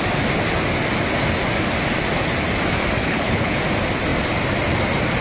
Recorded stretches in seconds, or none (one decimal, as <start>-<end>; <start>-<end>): 0.0-3.0; 3.6-5.2